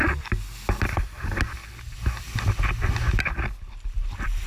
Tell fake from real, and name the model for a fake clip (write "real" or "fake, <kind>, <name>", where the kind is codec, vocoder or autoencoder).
real